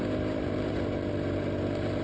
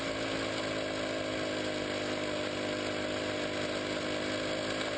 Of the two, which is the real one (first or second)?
second